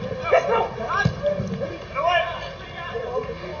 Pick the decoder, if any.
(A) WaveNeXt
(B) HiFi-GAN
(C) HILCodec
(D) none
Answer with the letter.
D